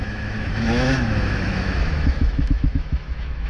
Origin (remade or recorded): remade